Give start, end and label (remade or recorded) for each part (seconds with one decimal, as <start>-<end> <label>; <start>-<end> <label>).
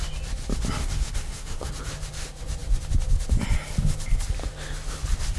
0.0-0.8 recorded; 0.8-1.7 remade; 1.7-5.4 recorded